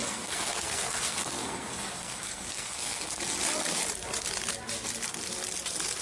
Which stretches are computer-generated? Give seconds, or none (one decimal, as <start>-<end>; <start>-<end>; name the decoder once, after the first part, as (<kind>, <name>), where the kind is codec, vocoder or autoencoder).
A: 0.0-3.2 (codec, SNAC)